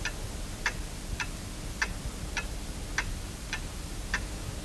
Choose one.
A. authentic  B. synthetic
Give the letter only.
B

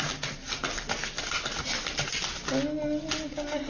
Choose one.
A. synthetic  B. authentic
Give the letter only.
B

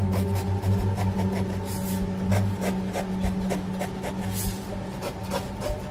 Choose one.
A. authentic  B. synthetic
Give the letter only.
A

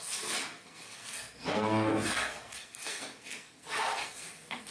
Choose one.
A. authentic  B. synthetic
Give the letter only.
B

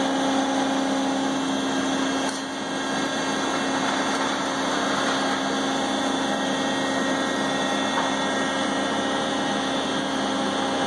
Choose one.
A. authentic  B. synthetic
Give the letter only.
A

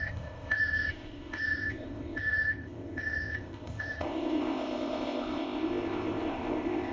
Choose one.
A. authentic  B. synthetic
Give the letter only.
B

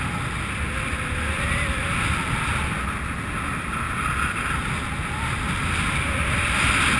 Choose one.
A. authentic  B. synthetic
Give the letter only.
A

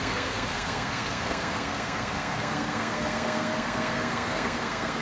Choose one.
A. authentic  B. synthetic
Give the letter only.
B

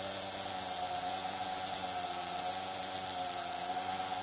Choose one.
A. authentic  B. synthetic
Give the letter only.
A